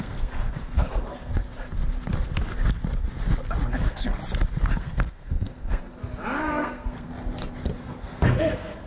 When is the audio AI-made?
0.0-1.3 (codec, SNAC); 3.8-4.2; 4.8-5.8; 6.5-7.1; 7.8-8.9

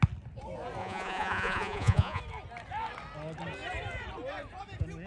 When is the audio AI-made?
0.8-2.2 (vocoder, Vocos)

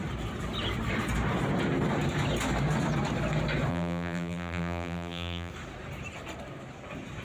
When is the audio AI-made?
3.7-5.5 (vocoder, BigVGAN v2)

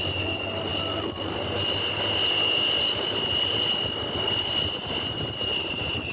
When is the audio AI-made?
none

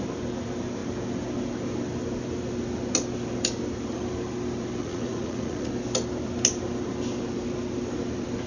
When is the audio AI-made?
4.8-5.7 (vocoder, Vocos)

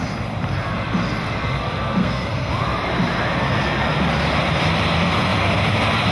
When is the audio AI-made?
2.0-2.5 (codec, SNAC)